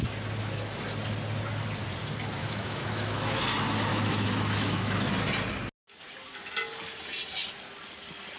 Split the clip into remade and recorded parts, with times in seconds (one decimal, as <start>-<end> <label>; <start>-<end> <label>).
0.0-2.4 recorded; 2.4-3.4 remade; 3.4-3.9 recorded; 3.9-5.1 remade; 5.1-8.4 recorded